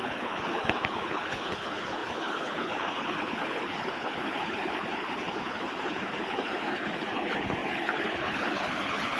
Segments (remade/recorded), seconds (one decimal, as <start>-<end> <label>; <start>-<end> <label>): 0.0-9.2 remade